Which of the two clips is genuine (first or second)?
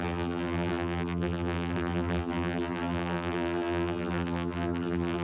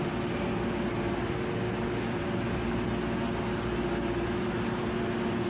second